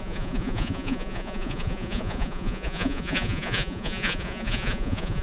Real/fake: fake